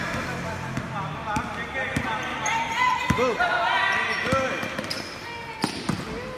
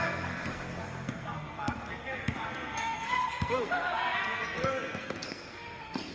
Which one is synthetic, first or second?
second